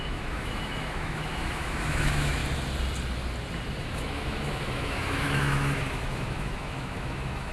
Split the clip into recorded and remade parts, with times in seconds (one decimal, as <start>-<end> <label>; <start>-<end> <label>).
0.0-2.4 remade; 2.4-3.8 recorded; 3.8-7.5 remade